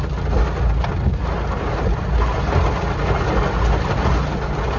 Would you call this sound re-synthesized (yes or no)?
no